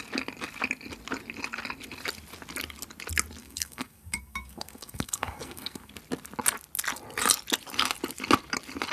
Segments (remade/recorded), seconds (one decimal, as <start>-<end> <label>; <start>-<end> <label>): 0.0-3.4 recorded; 3.4-5.9 remade; 5.9-8.9 recorded